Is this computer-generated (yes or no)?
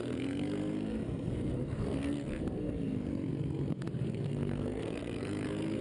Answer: yes